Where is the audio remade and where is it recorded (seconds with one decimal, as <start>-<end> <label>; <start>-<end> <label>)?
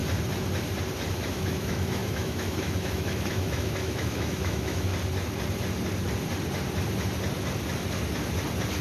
0.0-1.1 recorded; 1.1-4.9 remade; 4.9-8.8 recorded